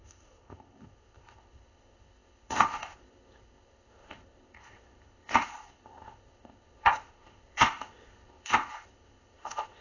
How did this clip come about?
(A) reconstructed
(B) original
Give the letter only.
A